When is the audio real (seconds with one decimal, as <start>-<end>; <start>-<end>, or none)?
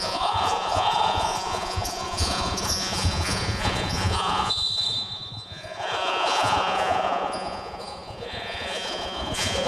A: none